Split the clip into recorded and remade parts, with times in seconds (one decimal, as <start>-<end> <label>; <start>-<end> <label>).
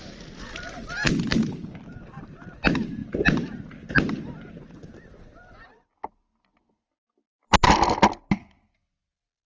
0.0-9.5 recorded